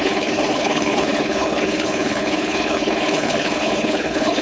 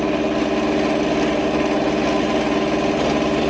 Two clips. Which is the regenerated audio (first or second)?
first